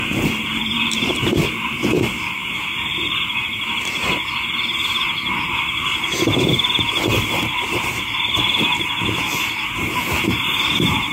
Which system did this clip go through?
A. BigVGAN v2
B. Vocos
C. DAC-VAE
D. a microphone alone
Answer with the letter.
A